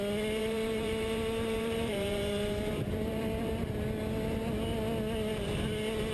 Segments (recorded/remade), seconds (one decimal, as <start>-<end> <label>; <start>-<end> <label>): 0.0-0.4 recorded; 0.4-3.5 remade; 3.5-6.1 recorded